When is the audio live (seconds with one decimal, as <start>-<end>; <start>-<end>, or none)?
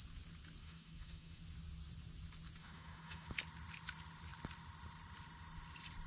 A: 0.0-0.6; 1.4-2.6; 3.3-6.1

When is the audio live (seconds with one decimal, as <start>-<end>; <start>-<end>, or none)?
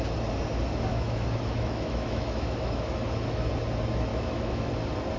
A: 0.0-0.9; 3.5-4.1; 4.7-5.2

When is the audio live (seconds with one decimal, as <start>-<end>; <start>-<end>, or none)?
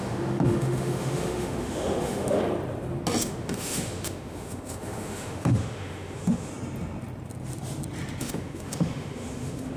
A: 2.4-3.2; 6.5-8.2